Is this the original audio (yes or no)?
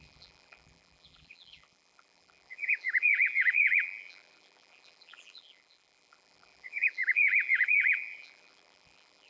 no